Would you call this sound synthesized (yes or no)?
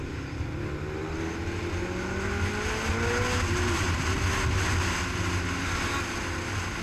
no